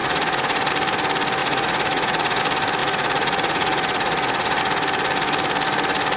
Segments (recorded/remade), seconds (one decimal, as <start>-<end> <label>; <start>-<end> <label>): 0.0-0.7 remade; 0.7-1.4 recorded; 1.4-2.4 remade; 2.4-2.8 recorded; 2.8-4.6 remade; 4.6-6.2 recorded